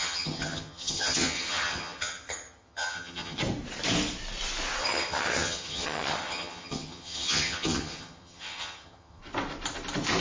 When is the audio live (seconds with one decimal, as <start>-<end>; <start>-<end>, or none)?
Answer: 3.4-4.8; 9.2-10.2